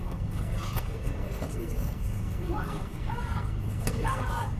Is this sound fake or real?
fake